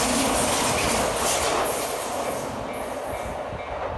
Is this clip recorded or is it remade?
recorded